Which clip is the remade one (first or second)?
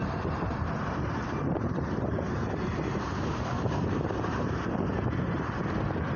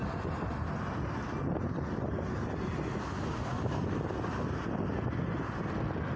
first